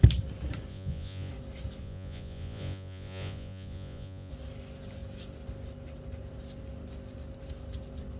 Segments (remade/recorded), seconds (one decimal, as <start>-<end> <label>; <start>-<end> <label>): 0.0-0.7 recorded; 0.7-1.3 remade; 1.3-1.8 recorded; 1.8-4.3 remade; 4.3-8.2 recorded